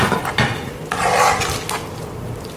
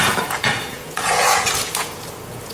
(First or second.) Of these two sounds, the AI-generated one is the second